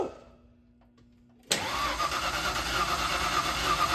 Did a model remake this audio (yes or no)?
no